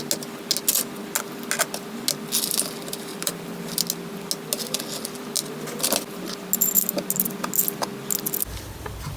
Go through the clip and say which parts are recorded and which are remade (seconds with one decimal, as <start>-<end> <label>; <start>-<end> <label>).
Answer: 0.0-3.1 recorded; 3.1-3.6 remade; 3.6-9.2 recorded

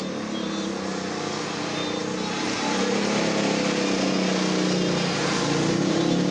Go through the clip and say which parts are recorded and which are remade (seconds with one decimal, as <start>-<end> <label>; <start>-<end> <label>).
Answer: 0.0-6.3 recorded

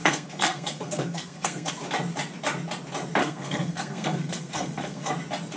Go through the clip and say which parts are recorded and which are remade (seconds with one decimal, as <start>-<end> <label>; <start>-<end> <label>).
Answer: 0.0-1.7 remade; 1.7-3.2 recorded; 3.2-5.1 remade; 5.1-5.6 recorded

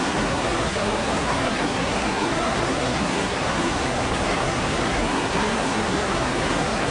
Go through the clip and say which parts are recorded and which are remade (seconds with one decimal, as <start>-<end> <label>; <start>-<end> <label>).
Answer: 0.0-6.9 remade

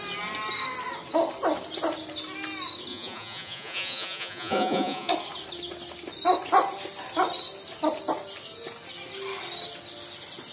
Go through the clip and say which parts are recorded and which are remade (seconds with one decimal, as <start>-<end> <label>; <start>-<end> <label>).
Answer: 0.0-2.9 recorded; 2.9-5.1 remade; 5.1-10.5 recorded

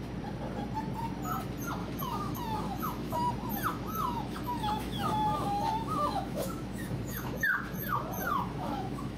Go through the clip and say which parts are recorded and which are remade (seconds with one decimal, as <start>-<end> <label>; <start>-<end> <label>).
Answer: 0.0-1.8 recorded; 1.8-3.3 remade; 3.3-3.7 recorded; 3.7-9.2 remade

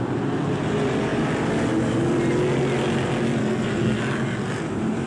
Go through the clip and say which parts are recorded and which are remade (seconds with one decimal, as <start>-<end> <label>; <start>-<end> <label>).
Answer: 0.0-3.4 recorded; 3.4-4.0 remade; 4.0-5.1 recorded

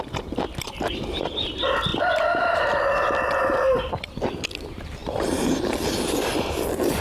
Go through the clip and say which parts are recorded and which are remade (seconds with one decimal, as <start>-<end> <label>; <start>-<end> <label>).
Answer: 0.0-7.0 recorded